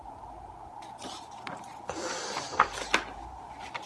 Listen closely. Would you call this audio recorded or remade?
recorded